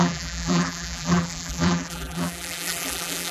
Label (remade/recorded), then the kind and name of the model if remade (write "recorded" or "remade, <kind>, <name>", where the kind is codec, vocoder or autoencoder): remade, vocoder, BigVGAN v2